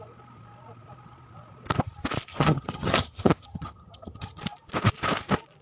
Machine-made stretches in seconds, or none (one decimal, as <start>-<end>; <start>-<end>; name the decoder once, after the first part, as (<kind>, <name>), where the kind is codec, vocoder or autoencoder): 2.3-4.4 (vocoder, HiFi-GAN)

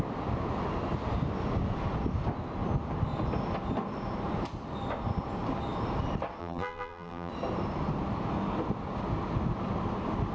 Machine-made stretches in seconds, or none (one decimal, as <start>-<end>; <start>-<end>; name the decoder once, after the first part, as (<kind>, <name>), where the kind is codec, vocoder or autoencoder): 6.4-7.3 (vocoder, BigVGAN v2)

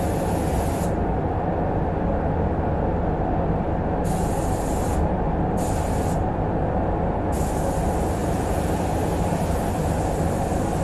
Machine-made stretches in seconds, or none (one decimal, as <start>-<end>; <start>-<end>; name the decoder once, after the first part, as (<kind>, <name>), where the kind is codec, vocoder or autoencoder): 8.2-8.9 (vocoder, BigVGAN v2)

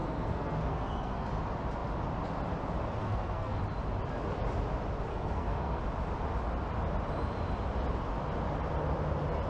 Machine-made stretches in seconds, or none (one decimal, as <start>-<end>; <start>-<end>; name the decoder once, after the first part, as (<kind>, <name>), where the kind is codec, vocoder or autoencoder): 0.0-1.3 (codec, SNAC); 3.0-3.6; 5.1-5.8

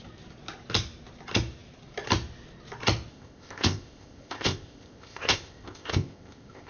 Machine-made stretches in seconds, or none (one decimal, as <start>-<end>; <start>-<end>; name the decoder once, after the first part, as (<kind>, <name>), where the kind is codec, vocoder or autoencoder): 3.1-6.7 (codec, ZipCodec)

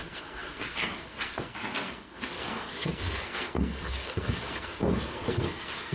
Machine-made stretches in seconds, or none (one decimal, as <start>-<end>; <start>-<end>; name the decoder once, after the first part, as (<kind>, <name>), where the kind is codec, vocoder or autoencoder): 0.0-5.9 (codec, SNAC)

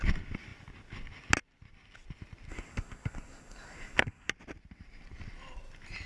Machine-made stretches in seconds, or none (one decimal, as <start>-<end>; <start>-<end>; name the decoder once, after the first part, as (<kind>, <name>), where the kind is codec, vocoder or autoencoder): 2.5-4.3 (codec, SNAC)